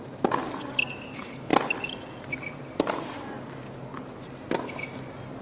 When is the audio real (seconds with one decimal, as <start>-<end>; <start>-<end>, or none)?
0.0-5.4